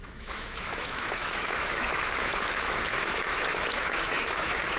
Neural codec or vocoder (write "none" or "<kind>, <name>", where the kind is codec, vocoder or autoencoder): autoencoder, DAC-VAE